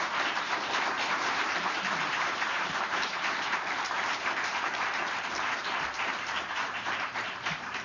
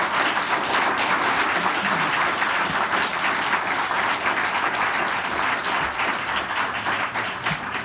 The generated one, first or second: first